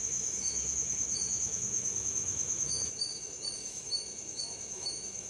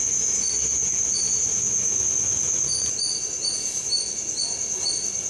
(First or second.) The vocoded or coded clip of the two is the first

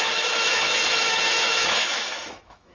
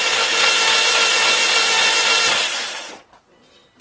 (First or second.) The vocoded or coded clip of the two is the first